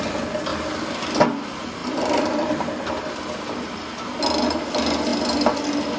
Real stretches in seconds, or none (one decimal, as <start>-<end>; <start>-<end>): 0.0-1.8; 3.0-6.0